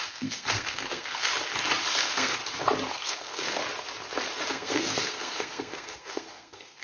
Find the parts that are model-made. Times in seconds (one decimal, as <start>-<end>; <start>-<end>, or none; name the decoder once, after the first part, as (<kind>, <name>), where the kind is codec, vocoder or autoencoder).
0.0-1.3 (codec, SNAC); 1.9-2.4; 2.9-3.6; 4.5-6.8